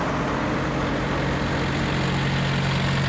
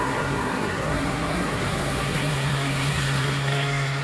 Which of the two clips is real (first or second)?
first